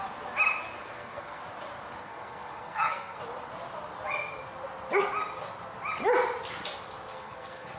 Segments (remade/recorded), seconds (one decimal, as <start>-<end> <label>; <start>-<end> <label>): 0.0-0.8 recorded; 0.8-1.4 remade; 1.4-2.0 recorded; 2.0-3.2 remade; 3.2-7.1 recorded; 7.1-7.8 remade